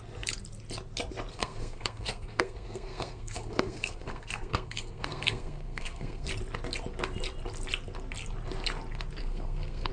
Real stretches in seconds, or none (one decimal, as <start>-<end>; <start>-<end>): 0.0-1.3; 6.3-9.2